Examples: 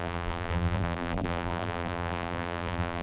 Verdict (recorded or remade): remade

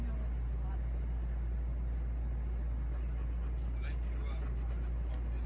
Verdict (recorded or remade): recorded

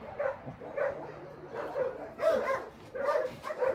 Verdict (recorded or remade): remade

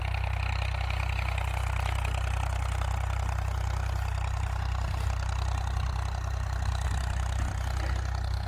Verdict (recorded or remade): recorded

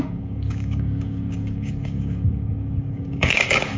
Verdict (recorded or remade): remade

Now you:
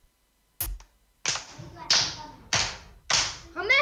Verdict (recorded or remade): recorded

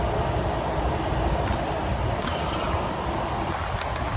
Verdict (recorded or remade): recorded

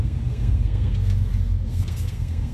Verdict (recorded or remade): remade